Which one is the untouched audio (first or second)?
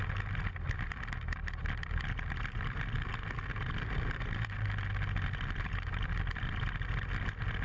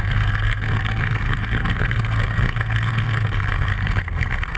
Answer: first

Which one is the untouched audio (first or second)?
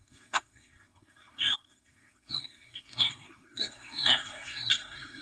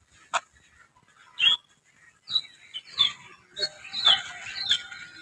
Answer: second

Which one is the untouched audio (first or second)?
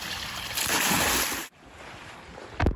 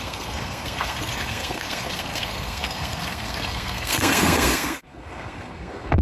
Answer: first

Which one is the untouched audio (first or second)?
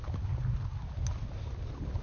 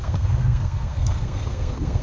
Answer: first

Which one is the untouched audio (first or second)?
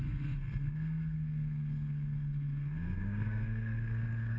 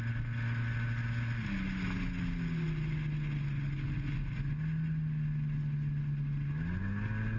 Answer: second